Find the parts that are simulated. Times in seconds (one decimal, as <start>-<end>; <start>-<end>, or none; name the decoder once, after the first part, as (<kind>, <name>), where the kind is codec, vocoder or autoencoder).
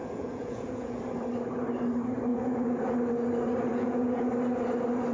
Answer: 0.0-1.0 (vocoder, Vocos); 2.3-2.9; 3.7-4.3